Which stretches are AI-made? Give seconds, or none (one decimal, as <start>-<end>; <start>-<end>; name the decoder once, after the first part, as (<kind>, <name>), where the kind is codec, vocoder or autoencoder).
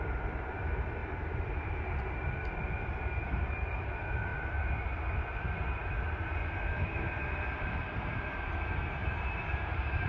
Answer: 0.0-10.1 (vocoder, BigVGAN v2)